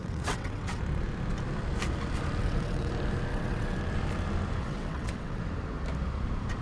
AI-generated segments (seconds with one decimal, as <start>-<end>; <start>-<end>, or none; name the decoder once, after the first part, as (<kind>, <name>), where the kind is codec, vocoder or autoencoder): 0.0-0.8 (vocoder, WaveNeXt); 2.4-2.9; 3.3-3.8; 4.6-5.4